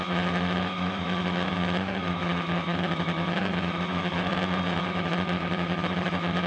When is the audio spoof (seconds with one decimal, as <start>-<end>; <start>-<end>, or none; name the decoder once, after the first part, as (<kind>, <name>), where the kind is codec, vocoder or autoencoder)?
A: 0.0-4.3 (autoencoder, DAC-VAE); 4.8-6.5